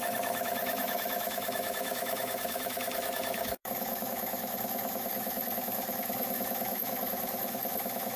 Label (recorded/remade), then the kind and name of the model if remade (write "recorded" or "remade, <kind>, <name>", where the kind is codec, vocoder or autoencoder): remade, autoencoder, DAC-VAE